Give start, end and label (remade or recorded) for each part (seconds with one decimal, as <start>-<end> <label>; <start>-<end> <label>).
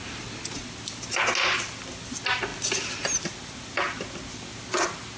0.0-5.2 recorded